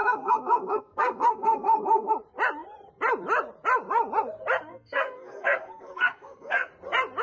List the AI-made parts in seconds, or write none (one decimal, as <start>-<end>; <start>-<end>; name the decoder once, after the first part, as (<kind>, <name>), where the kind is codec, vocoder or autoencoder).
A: 0.0-2.1 (codec, SNAC); 4.7-6.7